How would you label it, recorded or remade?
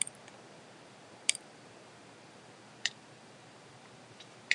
remade